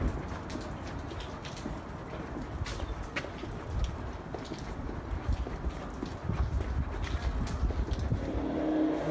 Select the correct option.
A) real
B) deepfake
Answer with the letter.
A